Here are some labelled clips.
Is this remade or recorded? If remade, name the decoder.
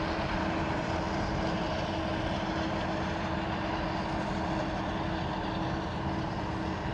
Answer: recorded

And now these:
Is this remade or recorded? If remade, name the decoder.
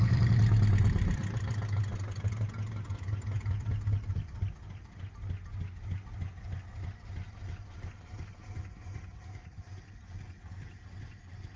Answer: recorded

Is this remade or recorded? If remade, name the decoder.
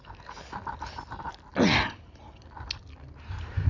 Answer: recorded